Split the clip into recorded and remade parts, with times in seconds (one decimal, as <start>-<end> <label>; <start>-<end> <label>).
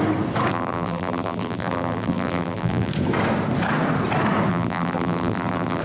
0.0-0.5 recorded; 0.5-2.9 remade; 2.9-4.5 recorded; 4.5-5.8 remade